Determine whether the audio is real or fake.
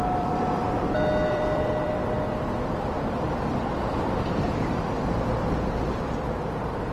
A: fake